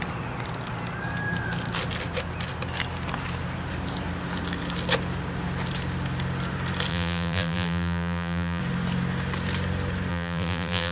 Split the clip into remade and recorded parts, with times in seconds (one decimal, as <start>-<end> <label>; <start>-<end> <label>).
0.0-6.9 recorded; 6.9-8.6 remade; 8.6-10.1 recorded; 10.1-10.9 remade